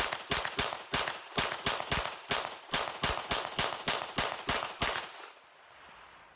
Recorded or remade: recorded